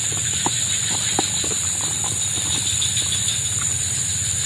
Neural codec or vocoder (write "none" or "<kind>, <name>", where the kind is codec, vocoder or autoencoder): none